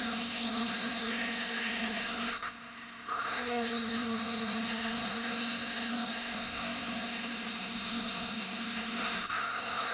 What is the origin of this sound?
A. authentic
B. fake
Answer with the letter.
B